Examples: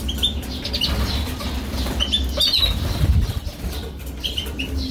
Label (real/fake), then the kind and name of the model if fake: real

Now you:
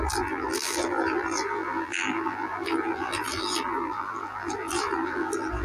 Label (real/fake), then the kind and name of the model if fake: fake, vocoder, BigVGAN v2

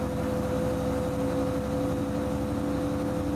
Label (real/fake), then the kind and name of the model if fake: real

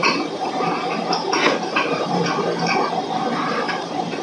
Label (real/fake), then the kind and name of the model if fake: fake, vocoder, BigVGAN v2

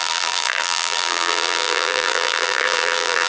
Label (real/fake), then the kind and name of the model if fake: fake, vocoder, BigVGAN v2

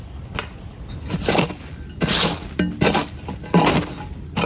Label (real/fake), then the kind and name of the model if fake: real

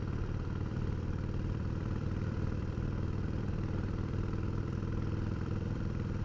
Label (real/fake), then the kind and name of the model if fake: fake, vocoder, BigVGAN v2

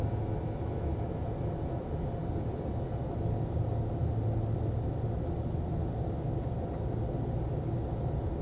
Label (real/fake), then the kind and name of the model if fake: real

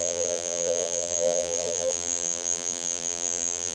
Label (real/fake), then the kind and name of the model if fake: fake, vocoder, BigVGAN v2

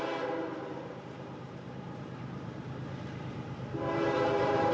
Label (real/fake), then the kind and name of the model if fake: fake, vocoder, BigVGAN v2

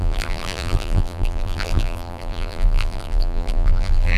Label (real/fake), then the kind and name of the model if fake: fake, vocoder, BigVGAN v2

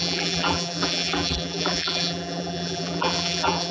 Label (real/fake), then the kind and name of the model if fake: fake, vocoder, BigVGAN v2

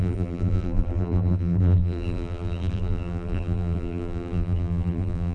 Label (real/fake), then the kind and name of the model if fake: fake, vocoder, BigVGAN v2